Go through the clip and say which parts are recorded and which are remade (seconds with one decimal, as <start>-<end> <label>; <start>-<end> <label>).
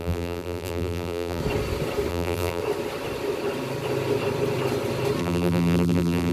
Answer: 0.0-1.4 remade; 1.4-2.1 recorded; 2.1-2.6 remade; 2.6-5.2 recorded; 5.2-6.3 remade